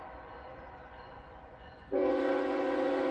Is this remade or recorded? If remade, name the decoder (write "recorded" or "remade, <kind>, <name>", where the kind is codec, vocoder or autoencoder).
remade, vocoder, Vocos